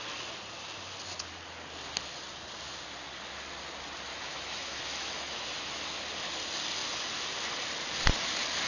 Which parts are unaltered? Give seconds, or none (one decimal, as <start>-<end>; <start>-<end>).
0.0-4.1; 6.0-8.7